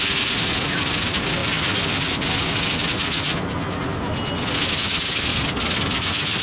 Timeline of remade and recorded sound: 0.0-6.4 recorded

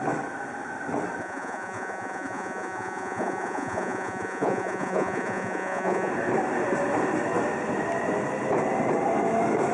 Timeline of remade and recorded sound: 0.0-1.2 recorded; 1.2-6.1 remade; 6.1-9.7 recorded

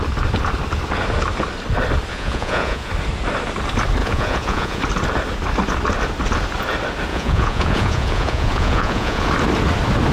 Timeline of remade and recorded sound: 0.0-2.1 recorded; 2.1-2.9 remade; 2.9-4.0 recorded; 4.0-4.8 remade; 4.8-7.1 recorded; 7.1-9.3 remade; 9.3-10.1 recorded

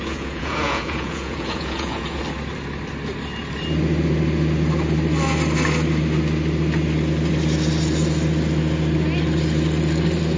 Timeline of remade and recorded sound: 0.0-2.2 remade; 2.2-10.4 recorded

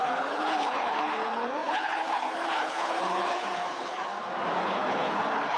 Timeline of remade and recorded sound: 0.0-4.1 remade; 4.1-4.6 recorded; 4.6-5.6 remade

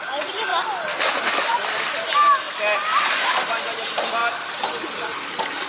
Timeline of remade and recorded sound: 0.0-5.7 recorded

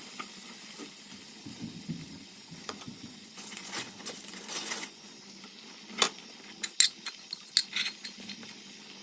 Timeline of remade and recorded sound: 0.0-2.2 recorded; 2.2-5.2 remade; 5.2-9.0 recorded